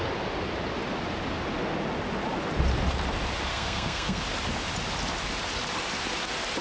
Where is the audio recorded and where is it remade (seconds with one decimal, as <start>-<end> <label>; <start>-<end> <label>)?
0.0-3.5 recorded; 3.5-4.2 remade; 4.2-6.6 recorded